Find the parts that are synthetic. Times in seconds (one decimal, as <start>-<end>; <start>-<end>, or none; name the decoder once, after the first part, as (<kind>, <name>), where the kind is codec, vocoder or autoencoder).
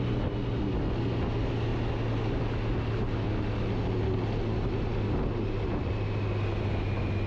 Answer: none